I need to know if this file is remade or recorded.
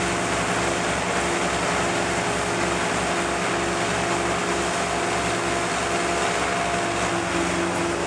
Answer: recorded